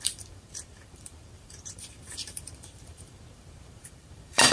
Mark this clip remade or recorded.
remade